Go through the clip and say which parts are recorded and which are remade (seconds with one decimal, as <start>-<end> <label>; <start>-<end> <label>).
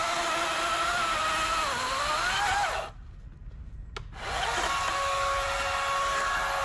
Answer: 0.0-6.6 recorded